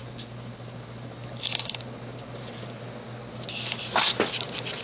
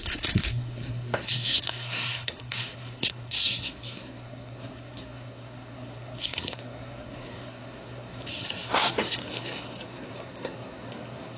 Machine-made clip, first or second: second